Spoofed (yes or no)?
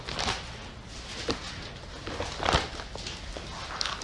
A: no